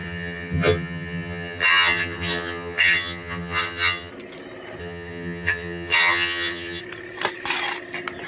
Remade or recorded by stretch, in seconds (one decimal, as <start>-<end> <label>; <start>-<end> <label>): 0.0-4.1 remade; 4.1-4.8 recorded; 4.8-6.8 remade; 6.8-8.3 recorded